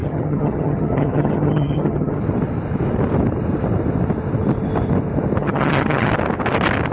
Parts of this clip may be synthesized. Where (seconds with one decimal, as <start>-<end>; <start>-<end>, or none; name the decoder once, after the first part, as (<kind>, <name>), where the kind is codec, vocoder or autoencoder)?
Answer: 0.0-2.2 (vocoder, HiFi-GAN); 5.4-6.1